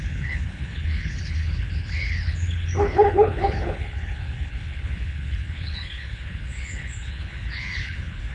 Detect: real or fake fake